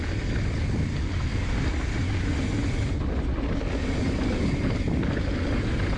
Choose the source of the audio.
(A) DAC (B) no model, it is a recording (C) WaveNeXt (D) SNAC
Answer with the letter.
B